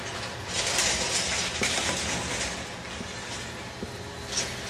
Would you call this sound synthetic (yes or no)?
no